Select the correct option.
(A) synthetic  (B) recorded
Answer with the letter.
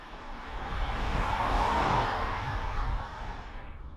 A